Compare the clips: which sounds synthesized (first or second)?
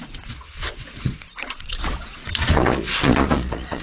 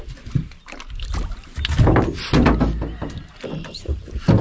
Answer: first